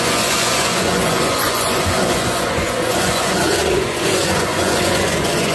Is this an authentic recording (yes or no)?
no